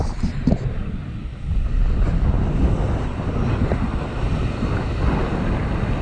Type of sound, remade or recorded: recorded